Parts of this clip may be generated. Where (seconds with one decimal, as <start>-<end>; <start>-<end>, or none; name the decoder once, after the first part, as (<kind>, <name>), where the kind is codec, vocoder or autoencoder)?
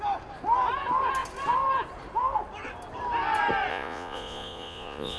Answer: 3.7-5.2 (vocoder, Vocos)